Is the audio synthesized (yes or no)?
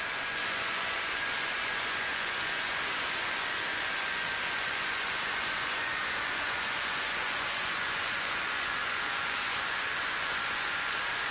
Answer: yes